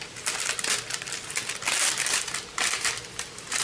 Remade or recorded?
recorded